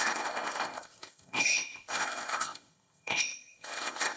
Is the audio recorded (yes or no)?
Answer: no